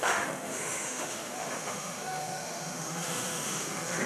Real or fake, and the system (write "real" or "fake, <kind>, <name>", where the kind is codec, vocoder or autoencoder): fake, autoencoder, DAC-VAE